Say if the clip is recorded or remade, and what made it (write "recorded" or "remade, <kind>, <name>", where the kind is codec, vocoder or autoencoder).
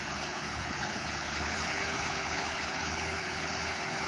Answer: remade, codec, HILCodec